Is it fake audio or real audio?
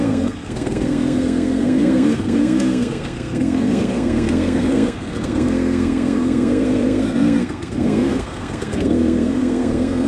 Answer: fake